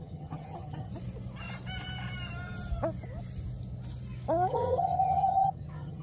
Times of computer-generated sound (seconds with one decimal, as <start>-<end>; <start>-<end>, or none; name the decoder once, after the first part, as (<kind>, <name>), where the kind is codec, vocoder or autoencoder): 0.0-0.9 (vocoder, HiFi-GAN); 4.5-6.0